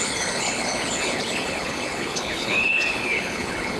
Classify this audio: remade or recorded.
remade